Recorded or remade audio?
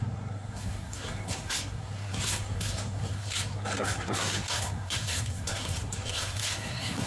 remade